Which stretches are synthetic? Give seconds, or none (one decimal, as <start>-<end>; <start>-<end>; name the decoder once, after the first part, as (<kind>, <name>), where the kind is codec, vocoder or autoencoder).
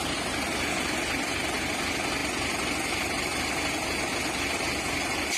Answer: none